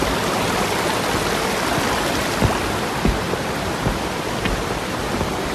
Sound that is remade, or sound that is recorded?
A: recorded